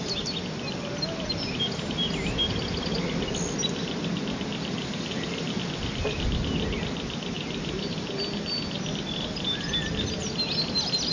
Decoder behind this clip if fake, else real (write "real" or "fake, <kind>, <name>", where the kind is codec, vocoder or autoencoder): real